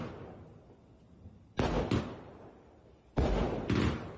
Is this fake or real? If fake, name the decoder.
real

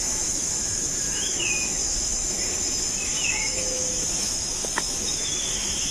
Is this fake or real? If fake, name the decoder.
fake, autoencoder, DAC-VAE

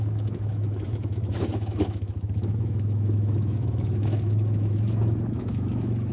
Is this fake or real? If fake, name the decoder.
fake, autoencoder, DAC-VAE